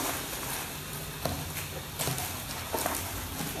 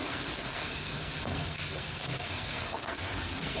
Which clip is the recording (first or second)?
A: first